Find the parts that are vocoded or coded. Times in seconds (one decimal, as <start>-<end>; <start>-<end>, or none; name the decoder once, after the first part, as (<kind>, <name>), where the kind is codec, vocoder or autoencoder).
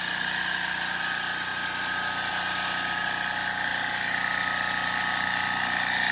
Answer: none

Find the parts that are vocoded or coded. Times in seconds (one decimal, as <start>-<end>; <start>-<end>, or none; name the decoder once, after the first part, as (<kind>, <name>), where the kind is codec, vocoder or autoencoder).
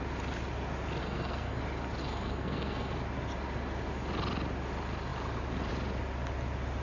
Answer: 1.0-1.6 (codec, SNAC); 2.0-2.9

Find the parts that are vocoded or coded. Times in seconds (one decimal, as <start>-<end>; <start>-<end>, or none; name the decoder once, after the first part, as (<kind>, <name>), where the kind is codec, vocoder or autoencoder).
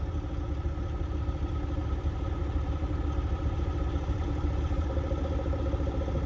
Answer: 1.8-5.6 (vocoder, BigVGAN v2)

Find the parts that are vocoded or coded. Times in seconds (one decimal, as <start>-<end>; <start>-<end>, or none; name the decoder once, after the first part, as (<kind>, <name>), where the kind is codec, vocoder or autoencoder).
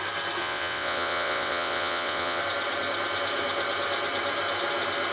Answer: 0.4-2.4 (vocoder, WaveNeXt)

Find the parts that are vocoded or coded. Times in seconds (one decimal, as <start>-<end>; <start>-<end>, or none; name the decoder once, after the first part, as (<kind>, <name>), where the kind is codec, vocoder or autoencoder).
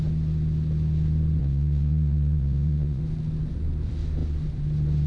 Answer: 1.4-3.0 (vocoder, Vocos)